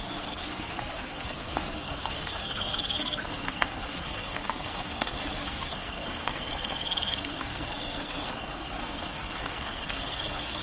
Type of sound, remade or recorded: remade